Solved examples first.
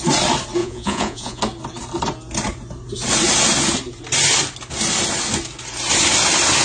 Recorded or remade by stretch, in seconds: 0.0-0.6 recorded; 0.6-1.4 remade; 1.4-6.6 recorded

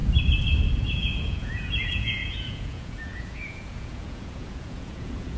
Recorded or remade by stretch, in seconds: 0.0-0.8 recorded; 0.8-5.4 remade

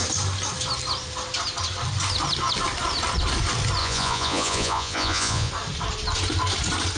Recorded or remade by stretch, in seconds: 0.0-3.8 recorded; 3.8-5.5 remade; 5.5-7.0 recorded